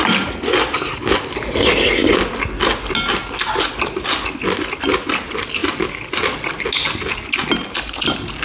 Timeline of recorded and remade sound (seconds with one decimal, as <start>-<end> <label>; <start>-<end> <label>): 0.0-8.4 recorded